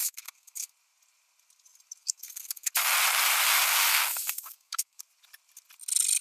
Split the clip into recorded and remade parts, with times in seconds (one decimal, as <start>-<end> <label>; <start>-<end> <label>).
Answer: 0.0-0.7 remade; 0.7-2.0 recorded; 2.0-2.7 remade; 2.7-3.9 recorded; 3.9-5.0 remade; 5.0-6.2 recorded